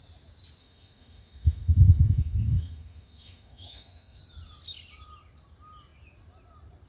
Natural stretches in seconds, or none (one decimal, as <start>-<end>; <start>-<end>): 0.0-0.6; 4.2-6.9